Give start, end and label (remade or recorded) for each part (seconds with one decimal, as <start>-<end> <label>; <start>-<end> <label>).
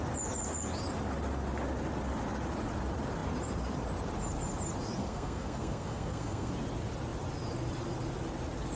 0.0-5.0 recorded; 5.0-6.5 remade; 6.5-8.8 recorded